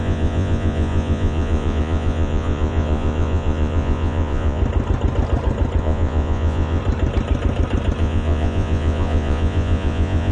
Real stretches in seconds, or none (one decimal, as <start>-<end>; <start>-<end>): 4.6-5.8; 6.8-8.0